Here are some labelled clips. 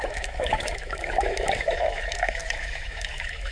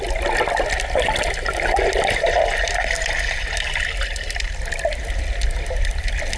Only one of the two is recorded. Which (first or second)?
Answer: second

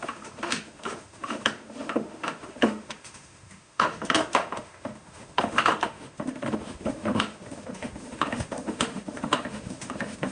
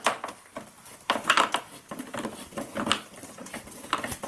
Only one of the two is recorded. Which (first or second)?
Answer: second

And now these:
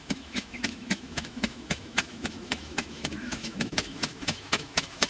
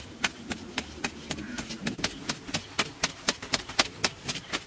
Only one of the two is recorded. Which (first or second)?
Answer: second